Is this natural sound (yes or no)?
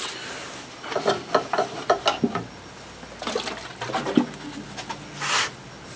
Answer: yes